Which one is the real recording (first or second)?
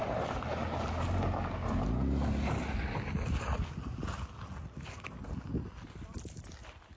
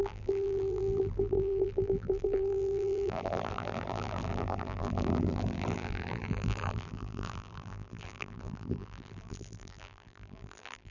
first